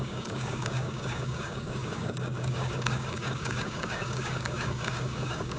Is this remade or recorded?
remade